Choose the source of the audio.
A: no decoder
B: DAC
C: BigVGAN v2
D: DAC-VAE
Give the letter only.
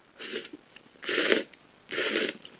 A